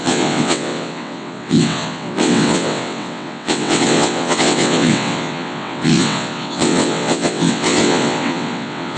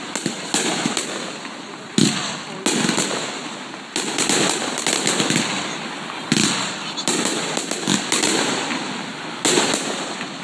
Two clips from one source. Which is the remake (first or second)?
first